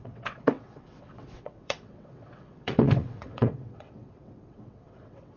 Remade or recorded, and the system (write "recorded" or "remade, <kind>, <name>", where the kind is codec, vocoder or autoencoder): remade, vocoder, WaveNeXt